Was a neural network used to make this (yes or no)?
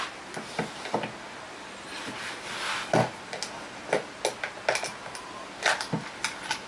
no